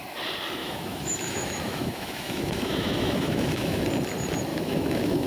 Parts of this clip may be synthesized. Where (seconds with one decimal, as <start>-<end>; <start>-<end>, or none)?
0.6-3.8; 4.5-5.3